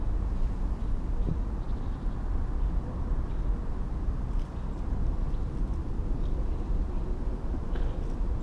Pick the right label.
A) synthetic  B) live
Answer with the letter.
B